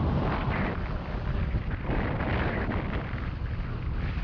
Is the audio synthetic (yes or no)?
no